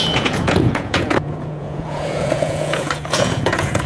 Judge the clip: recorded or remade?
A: remade